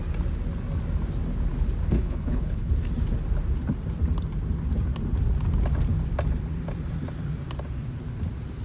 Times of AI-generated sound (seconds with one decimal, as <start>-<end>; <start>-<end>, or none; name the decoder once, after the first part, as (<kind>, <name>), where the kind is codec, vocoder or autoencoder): 1.8-2.7 (codec, HILCodec)